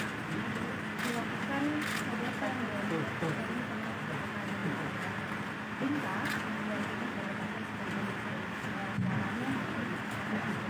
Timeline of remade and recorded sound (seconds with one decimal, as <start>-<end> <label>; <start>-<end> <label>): 0.0-10.7 recorded